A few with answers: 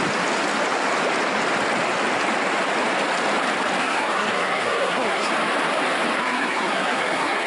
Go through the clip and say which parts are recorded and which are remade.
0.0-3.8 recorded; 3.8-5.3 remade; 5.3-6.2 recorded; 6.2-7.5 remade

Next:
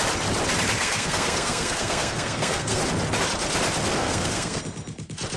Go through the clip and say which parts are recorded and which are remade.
0.0-0.8 recorded; 0.8-2.8 remade; 2.8-4.0 recorded; 4.0-4.6 remade; 4.6-5.4 recorded

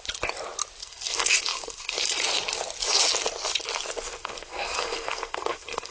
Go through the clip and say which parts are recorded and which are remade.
0.0-0.8 recorded; 0.8-2.2 remade; 2.2-4.2 recorded; 4.2-5.9 remade

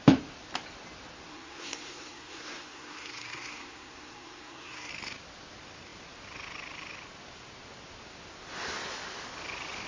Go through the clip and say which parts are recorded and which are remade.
0.0-1.3 recorded; 1.3-4.9 remade; 4.9-9.9 recorded

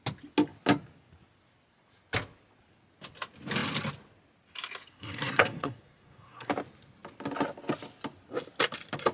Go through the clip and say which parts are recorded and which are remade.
0.0-4.9 recorded; 4.9-6.5 remade; 6.5-9.1 recorded